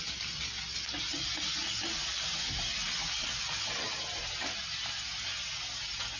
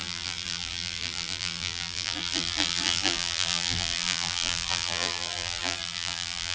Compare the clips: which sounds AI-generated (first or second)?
second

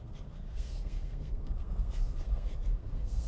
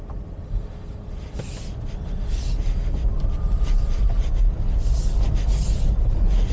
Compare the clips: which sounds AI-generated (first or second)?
first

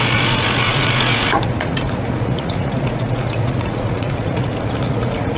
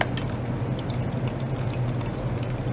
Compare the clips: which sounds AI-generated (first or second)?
first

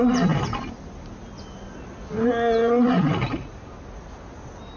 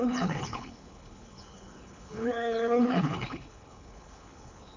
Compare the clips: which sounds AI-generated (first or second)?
second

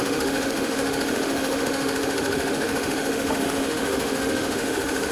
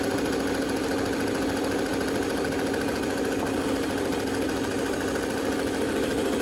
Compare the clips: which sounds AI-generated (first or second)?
first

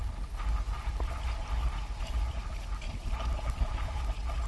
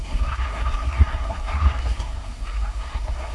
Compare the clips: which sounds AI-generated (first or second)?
second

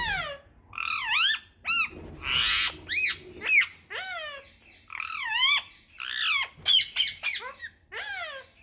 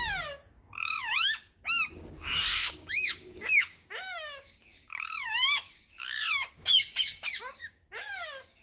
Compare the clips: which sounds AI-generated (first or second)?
second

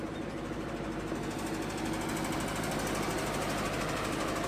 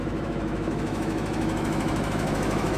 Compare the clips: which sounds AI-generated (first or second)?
second